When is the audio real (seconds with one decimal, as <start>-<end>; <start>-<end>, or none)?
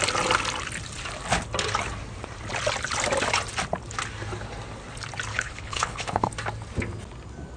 0.0-5.3; 6.3-7.6